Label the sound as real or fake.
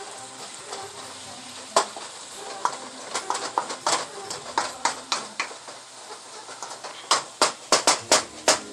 real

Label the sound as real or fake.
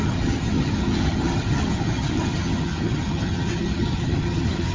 fake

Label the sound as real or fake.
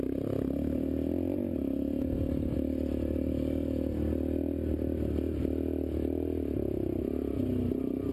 real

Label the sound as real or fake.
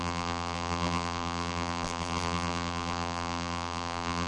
fake